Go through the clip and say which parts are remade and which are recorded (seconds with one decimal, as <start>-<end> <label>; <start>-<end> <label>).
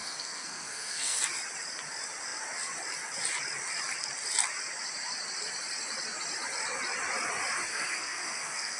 0.0-1.2 remade; 1.2-7.7 recorded; 7.7-8.8 remade